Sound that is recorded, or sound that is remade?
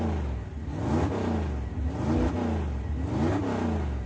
recorded